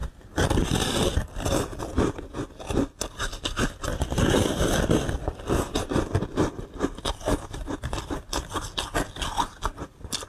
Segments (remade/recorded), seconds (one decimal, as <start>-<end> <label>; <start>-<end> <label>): 0.0-10.3 recorded